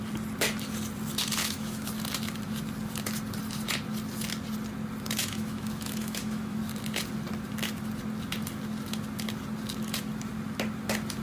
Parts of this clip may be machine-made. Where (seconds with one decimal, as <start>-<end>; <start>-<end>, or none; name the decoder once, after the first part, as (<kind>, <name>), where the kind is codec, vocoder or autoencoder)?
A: 1.4-1.9 (autoencoder, DAC-VAE); 5.2-6.6